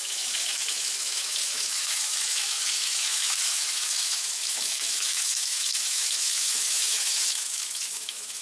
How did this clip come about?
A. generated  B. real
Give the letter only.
A